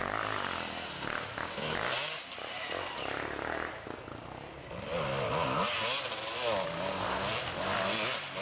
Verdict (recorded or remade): recorded